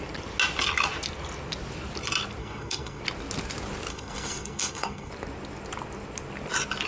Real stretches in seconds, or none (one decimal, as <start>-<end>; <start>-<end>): 0.0-2.4; 3.0-3.9; 5.1-6.9